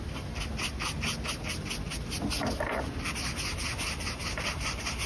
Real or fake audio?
real